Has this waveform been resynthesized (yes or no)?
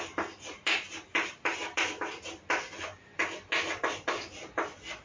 no